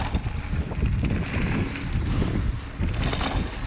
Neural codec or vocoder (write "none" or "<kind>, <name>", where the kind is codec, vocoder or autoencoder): none